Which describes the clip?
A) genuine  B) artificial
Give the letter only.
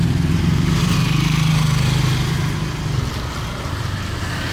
A